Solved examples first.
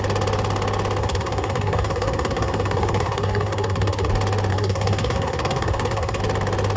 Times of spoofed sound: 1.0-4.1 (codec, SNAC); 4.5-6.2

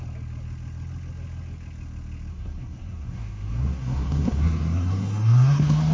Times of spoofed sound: 2.3-5.9 (codec, SNAC)